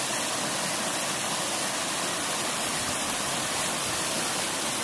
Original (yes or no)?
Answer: yes